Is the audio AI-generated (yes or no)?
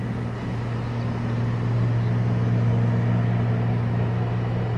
no